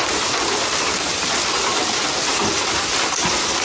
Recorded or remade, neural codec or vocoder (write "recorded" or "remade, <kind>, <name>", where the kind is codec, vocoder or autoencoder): recorded